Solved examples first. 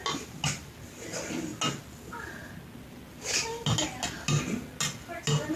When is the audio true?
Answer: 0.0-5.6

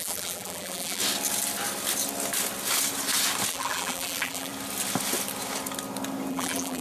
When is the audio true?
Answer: 1.0-3.5; 4.5-6.3

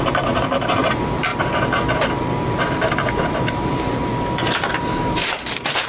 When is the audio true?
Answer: 1.3-2.2; 4.1-4.8

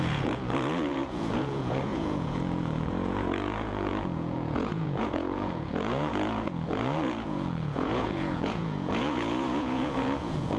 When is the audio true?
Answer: none

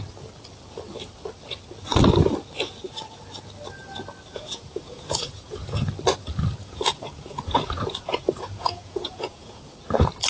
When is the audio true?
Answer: 0.0-4.3; 5.9-6.6; 9.7-10.3

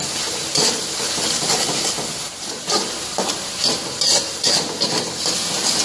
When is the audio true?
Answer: 0.0-5.8